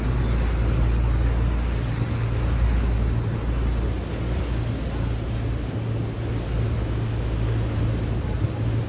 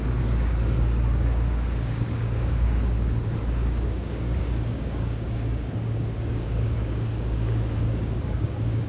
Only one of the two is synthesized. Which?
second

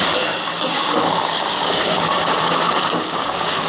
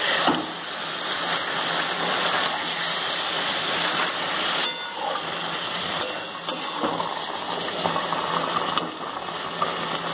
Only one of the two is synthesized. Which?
first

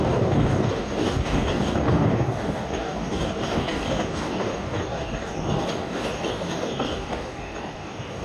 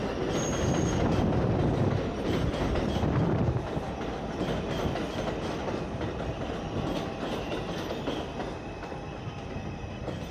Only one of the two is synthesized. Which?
first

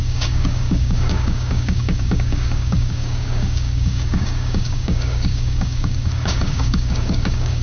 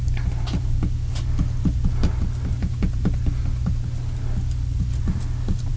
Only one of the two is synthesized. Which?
first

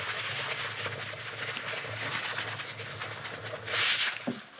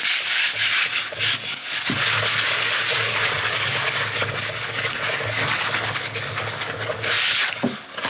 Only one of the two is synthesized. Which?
second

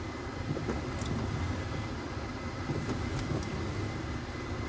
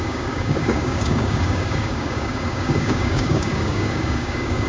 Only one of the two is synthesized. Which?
second